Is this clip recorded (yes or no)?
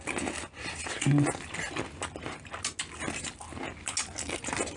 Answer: yes